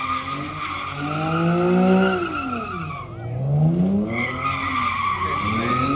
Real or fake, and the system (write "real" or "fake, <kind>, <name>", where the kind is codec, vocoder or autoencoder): real